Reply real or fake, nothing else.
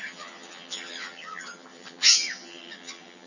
fake